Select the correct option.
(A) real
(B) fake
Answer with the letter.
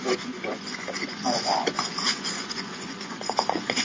B